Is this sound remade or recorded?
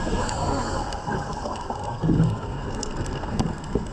remade